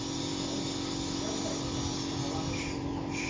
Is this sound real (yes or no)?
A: yes